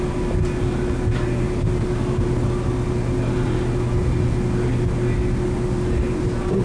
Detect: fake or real real